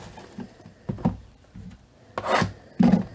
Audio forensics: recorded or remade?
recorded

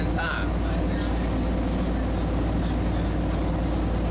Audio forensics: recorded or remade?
recorded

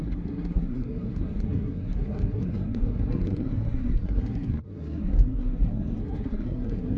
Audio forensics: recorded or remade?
remade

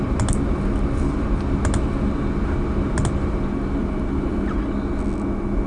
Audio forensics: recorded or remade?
recorded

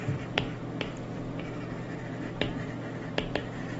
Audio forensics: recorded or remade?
recorded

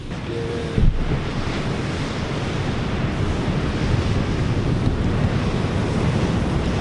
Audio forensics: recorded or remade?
recorded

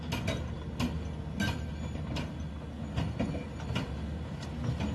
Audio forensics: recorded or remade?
recorded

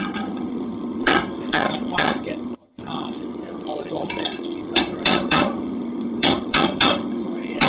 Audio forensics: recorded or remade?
remade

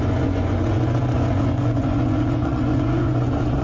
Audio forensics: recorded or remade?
remade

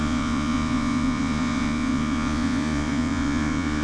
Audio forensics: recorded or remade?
remade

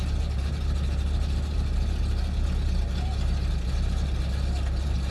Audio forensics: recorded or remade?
recorded